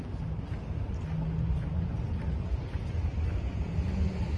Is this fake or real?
real